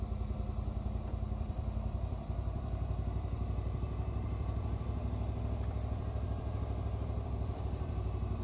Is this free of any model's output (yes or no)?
no